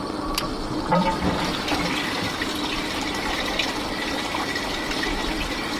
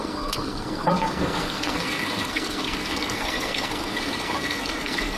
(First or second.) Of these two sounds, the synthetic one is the second